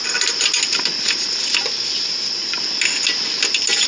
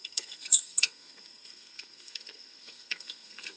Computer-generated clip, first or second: second